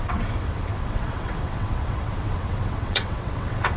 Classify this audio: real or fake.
fake